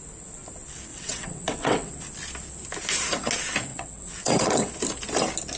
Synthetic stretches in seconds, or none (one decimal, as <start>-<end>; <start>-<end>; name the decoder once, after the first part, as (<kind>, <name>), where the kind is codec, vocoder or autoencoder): 0.9-1.9 (vocoder, WaveNeXt); 3.7-4.7